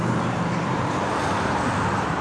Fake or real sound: fake